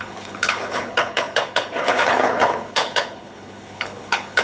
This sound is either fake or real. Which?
fake